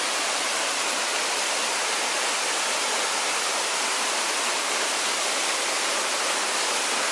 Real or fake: real